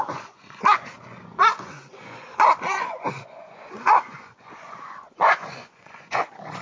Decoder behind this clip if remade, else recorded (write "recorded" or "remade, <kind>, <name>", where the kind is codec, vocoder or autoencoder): remade, vocoder, Vocos